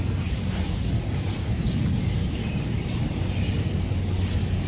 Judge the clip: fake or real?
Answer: real